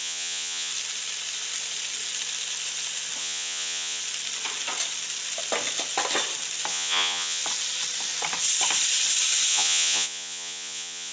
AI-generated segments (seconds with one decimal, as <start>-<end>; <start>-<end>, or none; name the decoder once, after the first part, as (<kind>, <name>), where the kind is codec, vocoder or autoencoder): 0.0-0.7 (vocoder, Vocos); 3.2-4.0; 6.7-7.4; 9.5-11.1